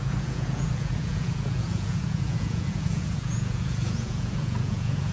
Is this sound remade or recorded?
remade